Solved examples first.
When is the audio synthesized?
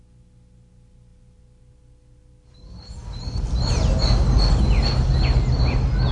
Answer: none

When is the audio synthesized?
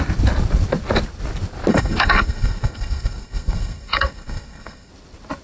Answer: 1.7-4.9 (codec, SNAC)